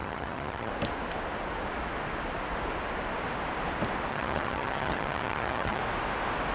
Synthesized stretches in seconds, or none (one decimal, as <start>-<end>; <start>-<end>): 0.0-0.7; 4.1-5.8